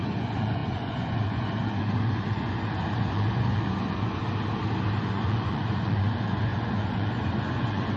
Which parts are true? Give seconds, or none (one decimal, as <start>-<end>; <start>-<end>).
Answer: 4.2-5.0